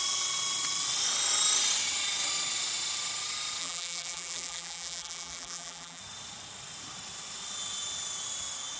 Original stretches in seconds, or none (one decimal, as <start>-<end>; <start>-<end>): 0.0-3.6; 6.0-8.8